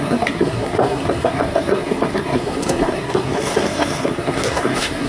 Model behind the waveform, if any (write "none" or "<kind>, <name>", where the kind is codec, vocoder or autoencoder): codec, SNAC